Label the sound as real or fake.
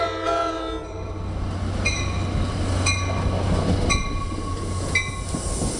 real